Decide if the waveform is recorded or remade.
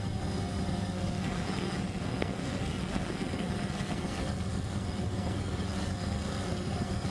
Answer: remade